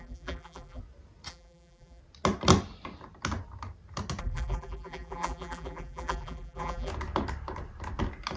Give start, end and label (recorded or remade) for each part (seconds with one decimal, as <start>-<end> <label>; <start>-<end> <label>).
0.0-0.8 remade; 0.8-1.3 recorded; 1.3-2.0 remade; 2.0-4.2 recorded; 4.2-6.9 remade; 6.9-8.4 recorded